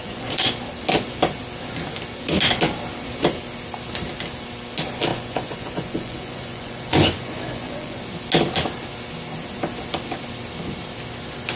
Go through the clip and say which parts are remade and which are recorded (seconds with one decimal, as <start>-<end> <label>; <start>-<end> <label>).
0.0-0.5 remade; 0.5-5.1 recorded; 5.1-8.0 remade; 8.0-11.6 recorded